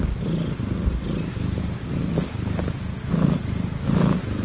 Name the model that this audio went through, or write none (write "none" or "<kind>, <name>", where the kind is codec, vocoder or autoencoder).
none